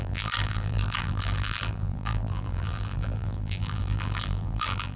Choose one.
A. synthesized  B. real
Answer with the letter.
A